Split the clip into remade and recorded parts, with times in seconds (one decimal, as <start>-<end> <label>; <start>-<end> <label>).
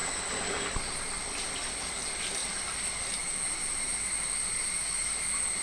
0.0-5.6 recorded